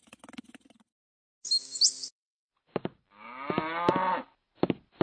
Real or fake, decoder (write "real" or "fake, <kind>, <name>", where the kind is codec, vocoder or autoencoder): real